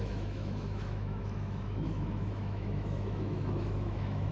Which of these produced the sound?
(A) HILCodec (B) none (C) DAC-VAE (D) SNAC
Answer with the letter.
C